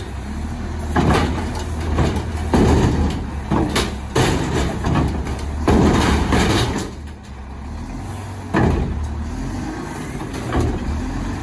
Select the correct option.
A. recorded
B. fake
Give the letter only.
A